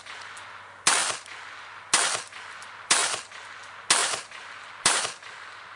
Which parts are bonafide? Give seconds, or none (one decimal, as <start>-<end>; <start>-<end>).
0.0-4.0; 5.0-5.8